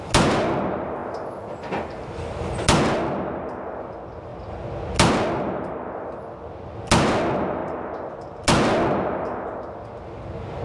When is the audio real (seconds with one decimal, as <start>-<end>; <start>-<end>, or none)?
0.0-10.6